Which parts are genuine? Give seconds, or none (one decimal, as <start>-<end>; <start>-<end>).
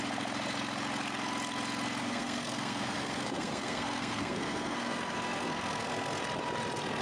0.0-2.0; 6.2-7.0